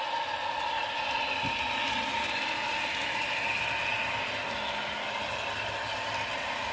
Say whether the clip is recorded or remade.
recorded